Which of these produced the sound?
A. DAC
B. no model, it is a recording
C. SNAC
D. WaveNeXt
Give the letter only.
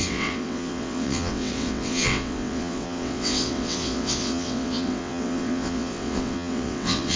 D